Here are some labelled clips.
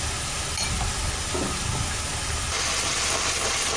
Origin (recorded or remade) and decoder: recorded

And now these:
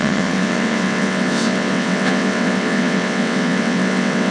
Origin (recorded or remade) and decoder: remade, vocoder, WaveNeXt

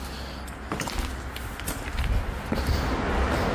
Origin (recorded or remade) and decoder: recorded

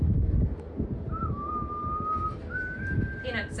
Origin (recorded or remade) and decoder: recorded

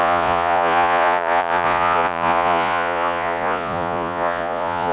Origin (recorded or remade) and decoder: remade, vocoder, Vocos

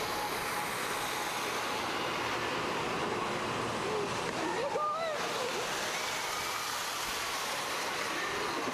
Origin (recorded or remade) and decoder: recorded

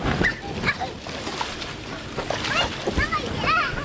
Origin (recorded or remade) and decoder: recorded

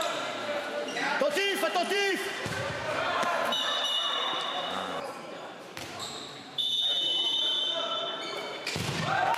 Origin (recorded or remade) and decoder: remade, vocoder, BigVGAN v2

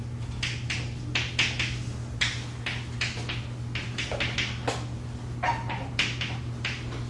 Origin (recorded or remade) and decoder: recorded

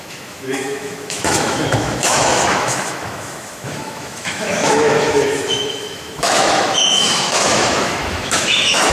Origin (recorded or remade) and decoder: remade, autoencoder, DAC-VAE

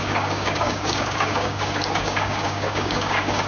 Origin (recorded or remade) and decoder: remade, codec, DAC